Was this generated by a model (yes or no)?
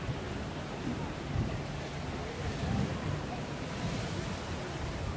no